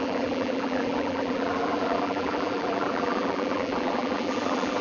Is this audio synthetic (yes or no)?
yes